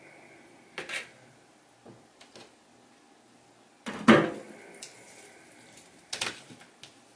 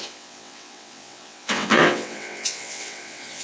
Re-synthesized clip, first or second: second